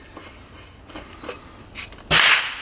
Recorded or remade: recorded